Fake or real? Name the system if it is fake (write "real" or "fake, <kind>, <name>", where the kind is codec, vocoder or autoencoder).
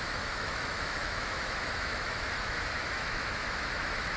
fake, autoencoder, DAC-VAE